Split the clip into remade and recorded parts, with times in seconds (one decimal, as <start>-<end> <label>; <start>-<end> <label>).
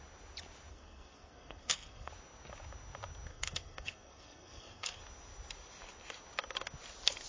0.0-0.7 recorded; 0.7-2.1 remade; 2.1-3.3 recorded; 3.3-5.0 remade; 5.0-7.3 recorded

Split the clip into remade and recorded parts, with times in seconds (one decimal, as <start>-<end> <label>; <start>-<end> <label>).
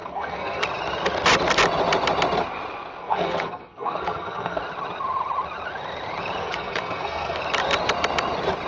0.0-0.6 remade; 0.6-3.0 recorded; 3.0-4.6 remade; 4.6-6.4 recorded; 6.4-7.4 remade; 7.4-8.7 recorded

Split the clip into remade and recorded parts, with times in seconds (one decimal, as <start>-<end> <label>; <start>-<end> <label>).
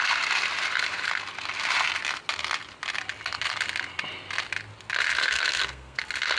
0.0-5.2 recorded; 5.2-6.0 remade; 6.0-6.4 recorded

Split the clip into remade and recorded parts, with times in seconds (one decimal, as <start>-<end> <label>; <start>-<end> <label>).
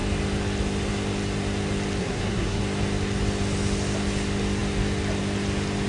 0.0-2.0 recorded; 2.0-2.6 remade; 2.6-5.9 recorded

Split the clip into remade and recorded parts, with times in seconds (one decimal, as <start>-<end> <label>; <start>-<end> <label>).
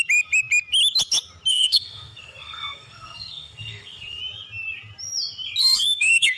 0.0-1.5 recorded; 1.5-4.2 remade; 4.2-5.6 recorded; 5.6-6.4 remade